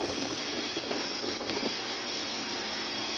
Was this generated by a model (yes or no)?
yes